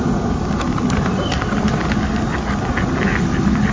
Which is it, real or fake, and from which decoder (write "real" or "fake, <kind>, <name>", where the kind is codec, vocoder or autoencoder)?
real